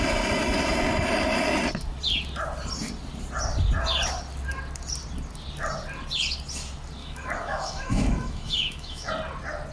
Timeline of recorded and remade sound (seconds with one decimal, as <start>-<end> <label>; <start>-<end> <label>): 0.0-7.0 recorded; 7.0-9.1 remade; 9.1-9.7 recorded